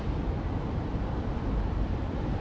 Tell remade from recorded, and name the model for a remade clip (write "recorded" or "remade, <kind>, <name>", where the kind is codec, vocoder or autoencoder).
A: remade, vocoder, BigVGAN v2